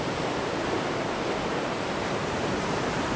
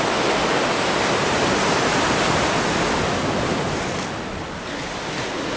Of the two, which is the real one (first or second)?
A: second